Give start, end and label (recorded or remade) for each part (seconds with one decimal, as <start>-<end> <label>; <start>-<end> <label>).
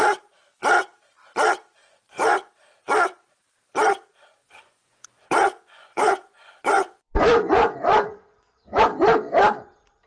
0.0-1.8 recorded; 1.8-2.5 remade; 2.5-4.4 recorded; 4.4-8.8 remade; 8.8-10.1 recorded